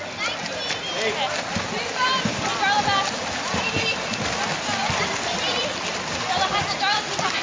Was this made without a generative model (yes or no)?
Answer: yes